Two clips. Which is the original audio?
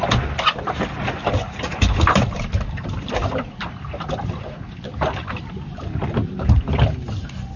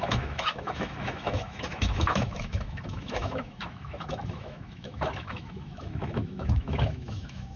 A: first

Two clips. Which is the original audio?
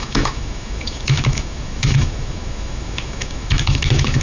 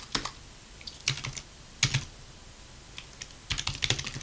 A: second